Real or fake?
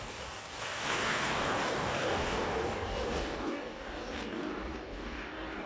fake